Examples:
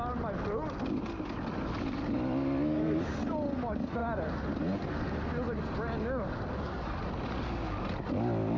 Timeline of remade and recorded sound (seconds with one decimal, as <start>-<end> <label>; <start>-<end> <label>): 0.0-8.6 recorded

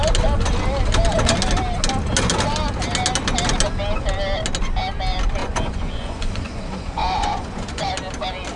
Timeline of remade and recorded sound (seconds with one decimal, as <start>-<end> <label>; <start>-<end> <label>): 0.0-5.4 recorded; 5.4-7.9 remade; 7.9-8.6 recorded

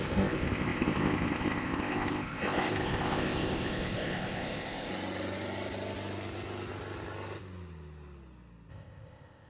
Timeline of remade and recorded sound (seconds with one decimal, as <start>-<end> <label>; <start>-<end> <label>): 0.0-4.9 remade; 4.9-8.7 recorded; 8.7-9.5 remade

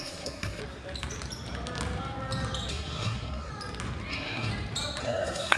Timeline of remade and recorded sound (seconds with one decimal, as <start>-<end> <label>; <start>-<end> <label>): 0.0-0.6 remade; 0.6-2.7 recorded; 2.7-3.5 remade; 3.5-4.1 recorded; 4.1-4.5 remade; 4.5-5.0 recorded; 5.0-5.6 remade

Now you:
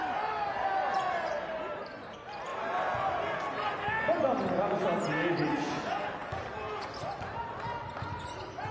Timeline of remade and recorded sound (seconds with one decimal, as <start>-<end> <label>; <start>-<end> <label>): 0.0-8.7 recorded